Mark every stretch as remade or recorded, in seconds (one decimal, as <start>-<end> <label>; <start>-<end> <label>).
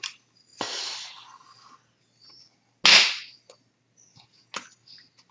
0.0-5.3 recorded